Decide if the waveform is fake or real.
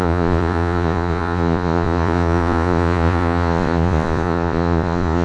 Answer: fake